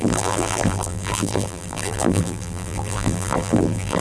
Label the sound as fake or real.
fake